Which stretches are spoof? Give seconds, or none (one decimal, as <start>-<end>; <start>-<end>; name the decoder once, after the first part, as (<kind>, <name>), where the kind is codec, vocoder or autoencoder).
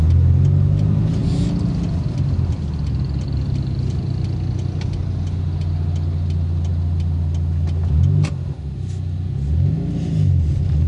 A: none